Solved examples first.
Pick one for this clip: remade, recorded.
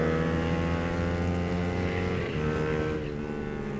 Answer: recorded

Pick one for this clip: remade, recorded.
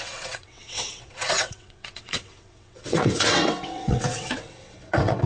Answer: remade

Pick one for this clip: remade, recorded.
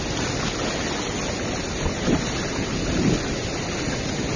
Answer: recorded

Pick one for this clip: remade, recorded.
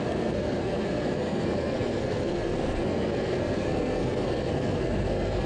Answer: remade